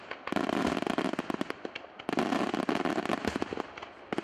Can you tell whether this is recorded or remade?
recorded